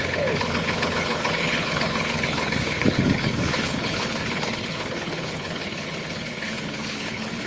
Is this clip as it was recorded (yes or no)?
no